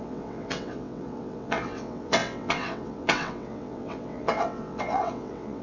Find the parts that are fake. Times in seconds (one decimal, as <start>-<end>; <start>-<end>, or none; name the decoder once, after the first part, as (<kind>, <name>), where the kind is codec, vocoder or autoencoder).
0.0-5.6 (vocoder, WaveNeXt)

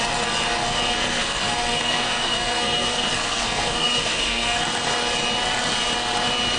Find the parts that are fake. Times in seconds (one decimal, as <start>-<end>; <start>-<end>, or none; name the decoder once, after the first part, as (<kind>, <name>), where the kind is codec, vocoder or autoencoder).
0.6-4.6 (codec, SNAC)

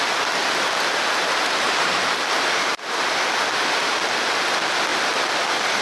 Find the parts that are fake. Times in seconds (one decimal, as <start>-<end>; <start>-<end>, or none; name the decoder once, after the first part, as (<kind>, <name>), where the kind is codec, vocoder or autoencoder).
1.2-3.1 (vocoder, BigVGAN v2)

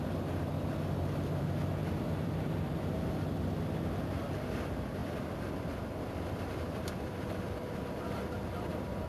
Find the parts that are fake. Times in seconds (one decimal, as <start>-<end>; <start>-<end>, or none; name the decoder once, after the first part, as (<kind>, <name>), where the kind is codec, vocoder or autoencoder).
1.8-3.1 (vocoder, BigVGAN v2); 5.0-9.1

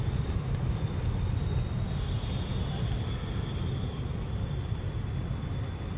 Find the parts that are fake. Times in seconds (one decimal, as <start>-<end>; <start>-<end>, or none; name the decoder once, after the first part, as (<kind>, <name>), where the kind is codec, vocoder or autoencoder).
none

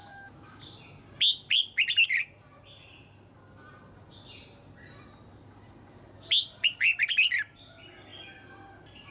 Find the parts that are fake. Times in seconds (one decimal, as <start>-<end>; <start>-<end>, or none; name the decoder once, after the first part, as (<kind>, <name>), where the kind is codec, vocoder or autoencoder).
0.0-0.6 (autoencoder, DAC-VAE)